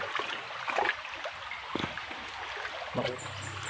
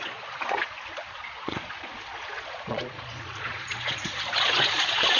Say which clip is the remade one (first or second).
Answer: second